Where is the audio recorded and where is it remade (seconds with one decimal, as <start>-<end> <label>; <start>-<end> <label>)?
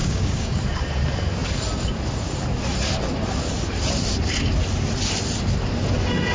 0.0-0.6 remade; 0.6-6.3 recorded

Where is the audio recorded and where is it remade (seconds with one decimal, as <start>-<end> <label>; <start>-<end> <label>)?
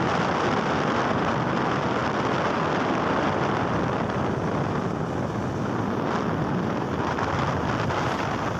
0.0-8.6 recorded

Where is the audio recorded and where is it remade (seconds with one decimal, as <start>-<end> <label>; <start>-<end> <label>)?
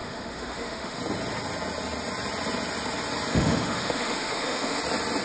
0.0-1.0 remade; 1.0-3.3 recorded; 3.3-4.8 remade; 4.8-5.2 recorded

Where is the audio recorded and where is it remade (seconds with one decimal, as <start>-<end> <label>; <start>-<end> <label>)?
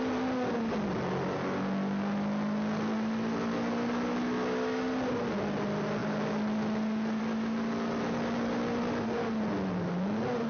0.0-10.5 recorded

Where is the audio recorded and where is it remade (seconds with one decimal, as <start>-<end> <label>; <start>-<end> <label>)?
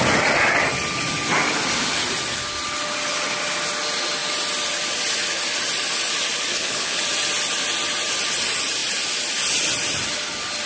0.0-6.5 recorded; 6.5-7.0 remade; 7.0-10.7 recorded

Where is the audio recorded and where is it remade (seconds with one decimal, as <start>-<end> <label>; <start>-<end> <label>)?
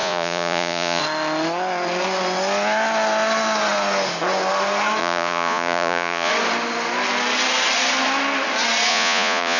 0.0-1.0 remade; 1.0-5.0 recorded; 5.0-6.3 remade; 6.3-8.9 recorded; 8.9-9.6 remade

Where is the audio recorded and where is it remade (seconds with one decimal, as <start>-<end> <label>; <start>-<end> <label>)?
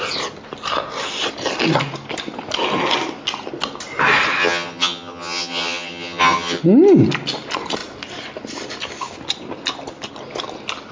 0.0-4.4 recorded; 4.4-6.6 remade; 6.6-10.9 recorded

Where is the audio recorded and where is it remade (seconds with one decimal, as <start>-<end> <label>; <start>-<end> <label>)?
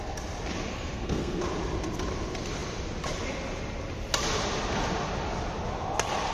0.0-0.7 recorded; 0.7-1.4 remade; 1.4-6.3 recorded